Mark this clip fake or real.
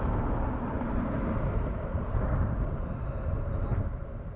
fake